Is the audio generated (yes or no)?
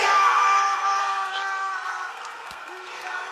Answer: yes